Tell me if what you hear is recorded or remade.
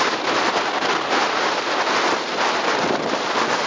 recorded